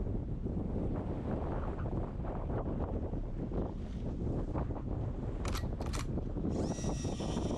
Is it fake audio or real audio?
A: real